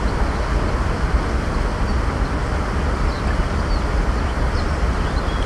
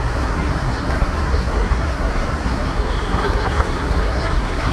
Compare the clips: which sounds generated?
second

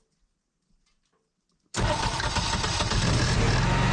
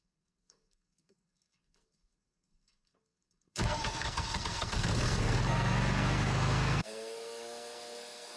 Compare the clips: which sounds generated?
second